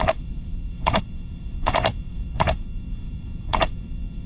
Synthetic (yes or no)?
yes